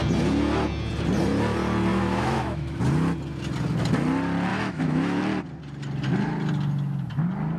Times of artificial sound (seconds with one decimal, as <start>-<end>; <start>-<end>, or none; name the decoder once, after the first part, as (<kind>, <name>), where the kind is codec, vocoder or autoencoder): 1.9-2.8 (autoencoder, DAC-VAE); 4.5-5.2